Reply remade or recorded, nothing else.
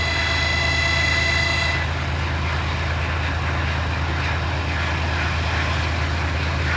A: recorded